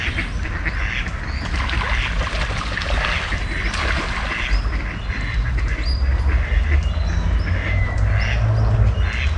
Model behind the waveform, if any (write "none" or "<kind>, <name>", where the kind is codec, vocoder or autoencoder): none